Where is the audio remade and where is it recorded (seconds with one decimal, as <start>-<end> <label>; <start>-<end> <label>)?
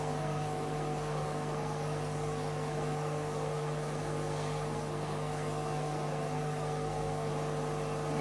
0.0-7.3 remade; 7.3-8.2 recorded